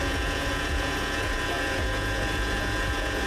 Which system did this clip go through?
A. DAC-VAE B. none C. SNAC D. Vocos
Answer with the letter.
D